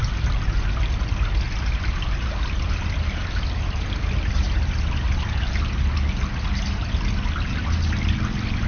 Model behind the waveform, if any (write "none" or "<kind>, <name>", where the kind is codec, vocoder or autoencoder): none